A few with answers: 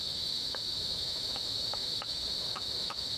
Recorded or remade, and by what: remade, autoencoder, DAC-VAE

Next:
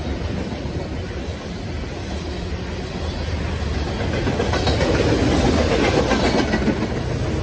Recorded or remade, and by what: recorded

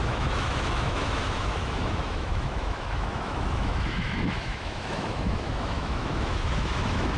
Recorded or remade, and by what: remade, autoencoder, DAC-VAE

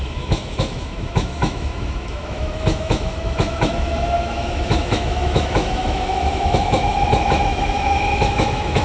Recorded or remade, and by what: remade, autoencoder, DAC-VAE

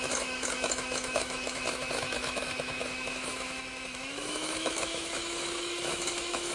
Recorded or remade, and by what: remade, autoencoder, DAC-VAE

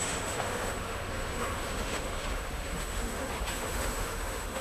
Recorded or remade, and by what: remade, autoencoder, DAC-VAE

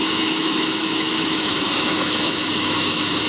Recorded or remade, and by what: remade, autoencoder, DAC-VAE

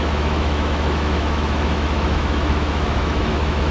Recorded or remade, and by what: remade, autoencoder, DAC-VAE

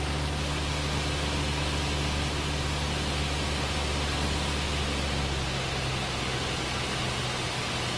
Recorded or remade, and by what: recorded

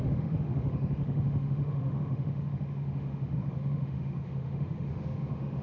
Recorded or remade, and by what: remade, autoencoder, DAC-VAE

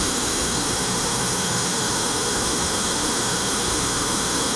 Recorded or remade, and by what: remade, autoencoder, DAC-VAE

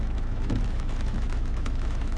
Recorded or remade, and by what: remade, autoencoder, DAC-VAE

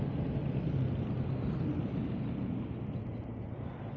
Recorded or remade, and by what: recorded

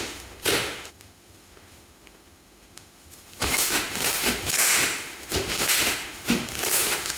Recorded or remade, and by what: remade, autoencoder, DAC-VAE